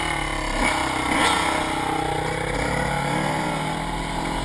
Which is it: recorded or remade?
recorded